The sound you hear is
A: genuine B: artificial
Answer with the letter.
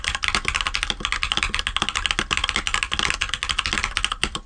A